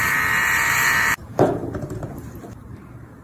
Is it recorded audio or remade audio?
remade